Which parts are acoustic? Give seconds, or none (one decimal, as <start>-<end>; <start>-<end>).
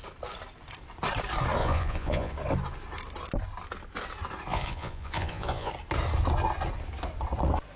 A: 0.0-1.6; 2.3-4.5; 5.7-7.8